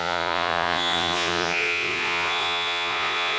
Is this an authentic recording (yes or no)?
no